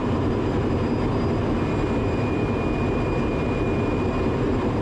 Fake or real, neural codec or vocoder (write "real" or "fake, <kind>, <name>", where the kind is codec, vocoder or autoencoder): fake, vocoder, BigVGAN v2